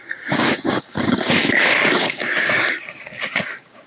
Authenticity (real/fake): fake